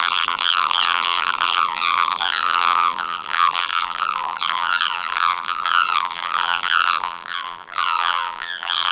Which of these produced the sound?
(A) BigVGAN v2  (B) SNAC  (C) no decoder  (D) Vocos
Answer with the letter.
A